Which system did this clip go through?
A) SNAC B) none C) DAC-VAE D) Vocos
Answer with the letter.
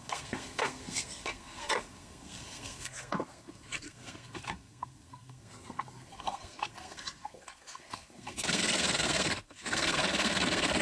A